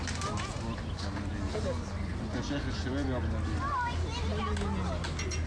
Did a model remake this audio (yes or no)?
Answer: no